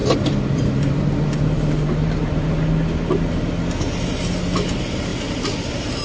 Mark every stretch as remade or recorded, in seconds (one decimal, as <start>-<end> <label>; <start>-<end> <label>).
0.0-2.5 remade; 2.5-6.0 recorded